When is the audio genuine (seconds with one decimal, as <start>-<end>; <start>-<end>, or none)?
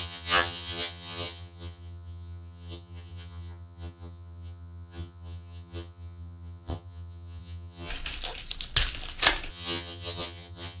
7.9-9.5